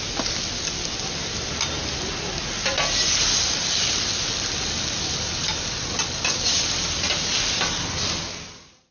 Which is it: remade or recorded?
recorded